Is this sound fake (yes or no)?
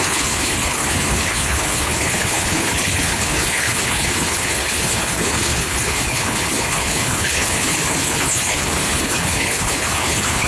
yes